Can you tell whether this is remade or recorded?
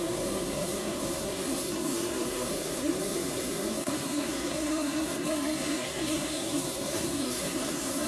remade